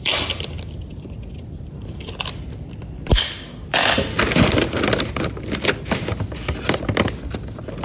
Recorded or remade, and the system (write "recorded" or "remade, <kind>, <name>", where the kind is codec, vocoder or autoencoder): recorded